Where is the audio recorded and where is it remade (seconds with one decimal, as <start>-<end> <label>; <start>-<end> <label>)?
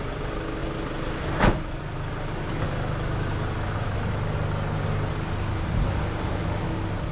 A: 0.0-7.1 recorded